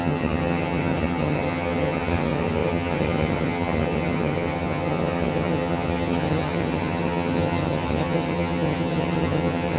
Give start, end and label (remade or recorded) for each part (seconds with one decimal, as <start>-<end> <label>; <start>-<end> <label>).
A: 0.0-9.8 remade